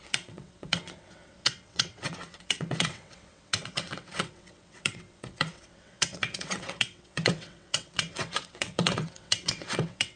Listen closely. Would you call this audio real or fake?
fake